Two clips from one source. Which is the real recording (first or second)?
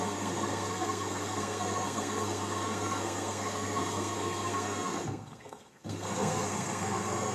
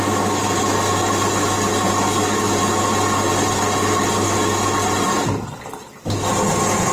second